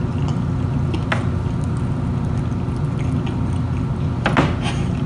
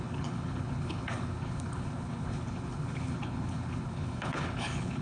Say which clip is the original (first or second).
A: first